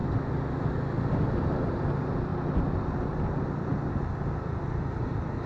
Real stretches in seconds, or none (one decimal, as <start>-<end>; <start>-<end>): 0.0-5.5